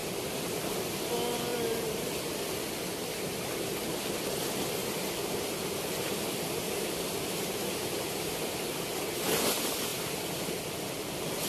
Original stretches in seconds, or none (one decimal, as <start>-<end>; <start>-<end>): 0.6-1.5; 2.2-4.8; 8.3-9.9; 10.5-11.5